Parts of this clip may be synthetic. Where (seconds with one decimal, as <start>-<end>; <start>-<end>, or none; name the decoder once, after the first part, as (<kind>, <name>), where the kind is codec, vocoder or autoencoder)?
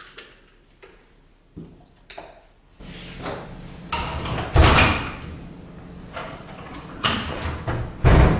6.2-7.4 (vocoder, Vocos)